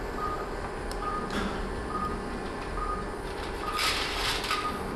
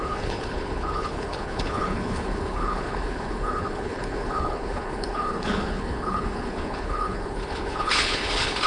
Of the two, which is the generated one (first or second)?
second